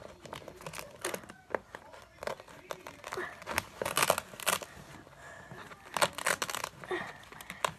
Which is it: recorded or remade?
recorded